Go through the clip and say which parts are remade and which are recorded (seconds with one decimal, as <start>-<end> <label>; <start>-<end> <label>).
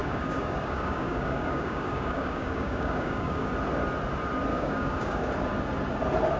0.0-3.5 remade; 3.5-4.5 recorded; 4.5-5.3 remade; 5.3-6.4 recorded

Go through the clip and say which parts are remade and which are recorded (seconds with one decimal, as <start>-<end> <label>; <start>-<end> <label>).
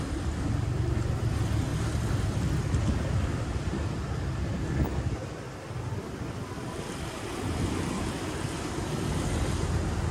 0.0-10.1 recorded